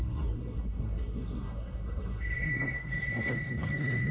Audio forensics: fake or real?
fake